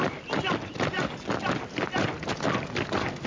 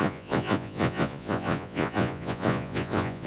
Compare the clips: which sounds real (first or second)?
first